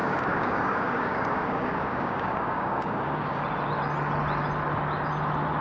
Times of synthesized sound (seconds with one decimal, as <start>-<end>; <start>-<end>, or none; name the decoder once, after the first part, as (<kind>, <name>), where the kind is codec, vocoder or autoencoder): 0.0-3.4 (codec, DAC)